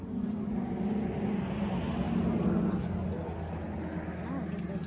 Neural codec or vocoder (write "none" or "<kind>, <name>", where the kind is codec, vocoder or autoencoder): none